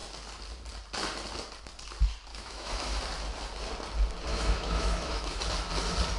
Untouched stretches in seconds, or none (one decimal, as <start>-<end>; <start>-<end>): 0.0-2.3; 3.0-4.3; 5.4-6.2